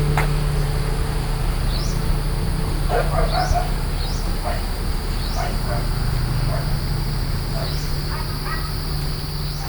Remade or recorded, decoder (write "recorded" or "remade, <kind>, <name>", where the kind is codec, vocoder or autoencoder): recorded